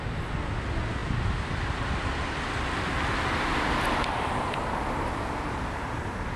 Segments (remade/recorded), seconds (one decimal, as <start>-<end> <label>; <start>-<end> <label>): 0.0-6.4 recorded